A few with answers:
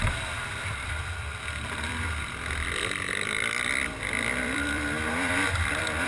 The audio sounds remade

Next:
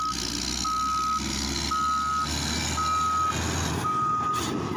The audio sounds recorded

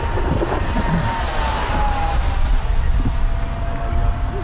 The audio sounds recorded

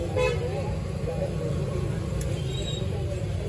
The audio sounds recorded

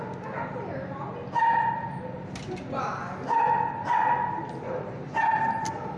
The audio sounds recorded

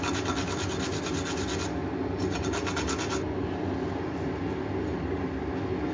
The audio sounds recorded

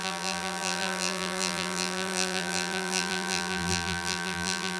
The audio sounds remade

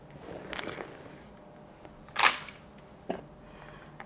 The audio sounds recorded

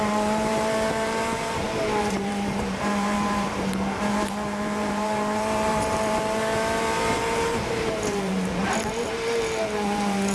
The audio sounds remade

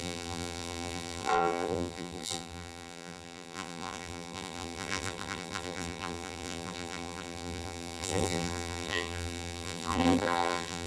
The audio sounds remade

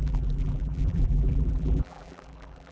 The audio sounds remade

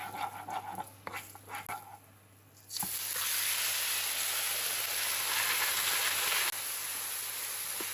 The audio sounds recorded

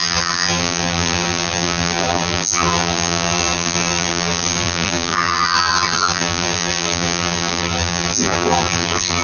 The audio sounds remade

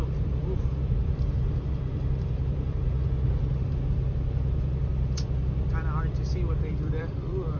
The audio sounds remade